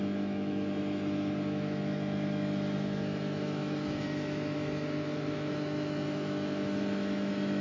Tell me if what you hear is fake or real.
fake